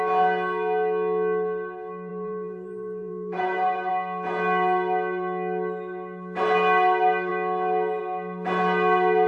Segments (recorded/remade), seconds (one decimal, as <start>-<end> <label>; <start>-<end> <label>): 0.0-2.1 recorded; 2.1-3.9 remade; 3.9-9.3 recorded